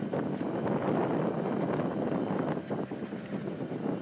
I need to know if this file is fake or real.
real